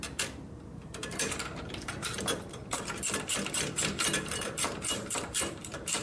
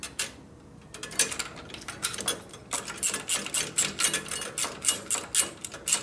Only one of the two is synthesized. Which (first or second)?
first